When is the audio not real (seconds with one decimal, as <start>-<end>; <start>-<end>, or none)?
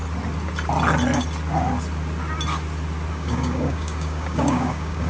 3.1-5.1